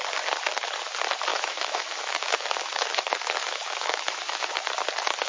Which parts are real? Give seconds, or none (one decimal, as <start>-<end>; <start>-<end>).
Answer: 0.0-1.3; 4.5-5.3